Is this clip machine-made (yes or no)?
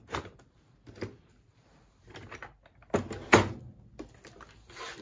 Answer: no